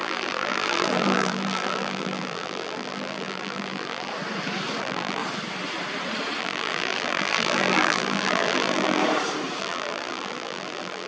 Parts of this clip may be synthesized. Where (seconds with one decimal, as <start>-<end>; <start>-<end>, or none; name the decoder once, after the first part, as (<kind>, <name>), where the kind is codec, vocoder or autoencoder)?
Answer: 0.0-4.1 (vocoder, BigVGAN v2); 4.8-5.2; 6.4-9.0; 9.6-11.1